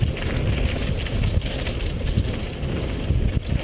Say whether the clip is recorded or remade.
recorded